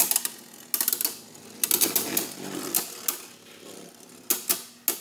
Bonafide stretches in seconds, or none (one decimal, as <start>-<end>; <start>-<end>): 0.0-5.0